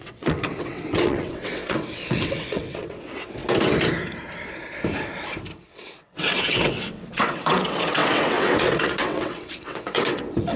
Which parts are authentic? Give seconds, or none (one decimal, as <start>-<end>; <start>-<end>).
3.4-5.7